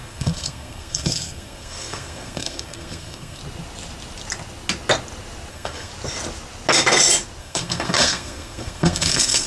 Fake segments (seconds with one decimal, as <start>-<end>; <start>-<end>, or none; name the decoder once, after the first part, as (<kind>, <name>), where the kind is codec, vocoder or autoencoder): 0.0-3.4 (codec, SNAC); 5.5-5.9; 7.4-9.5